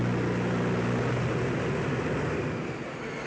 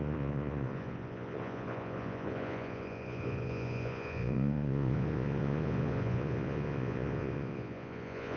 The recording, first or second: first